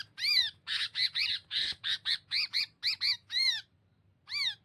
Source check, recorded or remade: remade